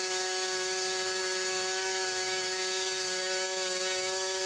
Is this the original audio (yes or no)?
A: no